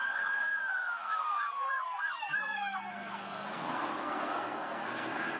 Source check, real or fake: fake